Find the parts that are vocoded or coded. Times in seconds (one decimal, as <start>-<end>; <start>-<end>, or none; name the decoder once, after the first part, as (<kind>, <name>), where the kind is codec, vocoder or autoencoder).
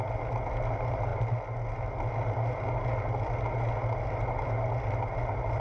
none